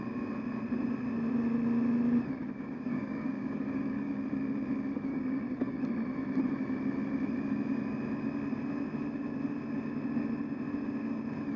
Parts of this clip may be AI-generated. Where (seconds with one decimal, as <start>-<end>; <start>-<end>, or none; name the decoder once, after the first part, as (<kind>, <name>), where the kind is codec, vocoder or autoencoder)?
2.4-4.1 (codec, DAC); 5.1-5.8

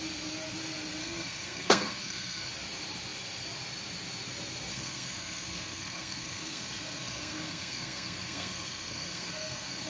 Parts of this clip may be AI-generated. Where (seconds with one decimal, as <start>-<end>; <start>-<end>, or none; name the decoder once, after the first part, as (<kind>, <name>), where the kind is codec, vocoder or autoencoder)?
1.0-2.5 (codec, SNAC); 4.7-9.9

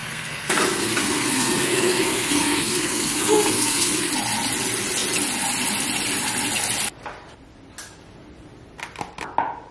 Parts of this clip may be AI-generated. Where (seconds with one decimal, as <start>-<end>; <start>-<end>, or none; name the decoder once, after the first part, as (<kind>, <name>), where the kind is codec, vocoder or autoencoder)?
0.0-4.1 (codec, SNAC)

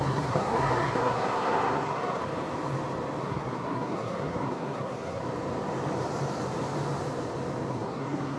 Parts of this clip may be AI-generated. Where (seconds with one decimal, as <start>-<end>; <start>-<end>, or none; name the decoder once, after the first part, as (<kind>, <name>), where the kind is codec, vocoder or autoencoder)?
0.0-2.2 (codec, SNAC); 3.2-5.2; 7.7-8.4

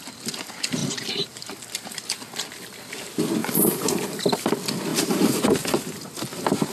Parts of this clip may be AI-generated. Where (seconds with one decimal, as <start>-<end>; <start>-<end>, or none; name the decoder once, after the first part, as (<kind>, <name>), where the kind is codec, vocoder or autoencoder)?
3.4-4.2 (vocoder, BigVGAN v2); 4.9-5.4

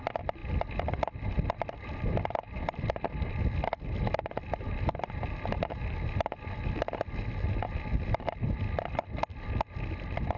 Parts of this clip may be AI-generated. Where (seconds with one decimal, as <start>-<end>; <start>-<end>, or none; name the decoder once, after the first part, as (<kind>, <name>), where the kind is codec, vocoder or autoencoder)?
none